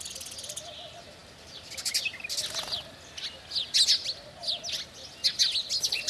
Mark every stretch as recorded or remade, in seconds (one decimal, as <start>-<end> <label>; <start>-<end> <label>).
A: 0.0-6.1 recorded